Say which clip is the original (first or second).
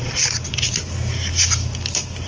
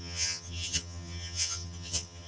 first